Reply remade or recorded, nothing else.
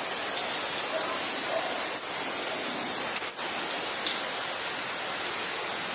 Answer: recorded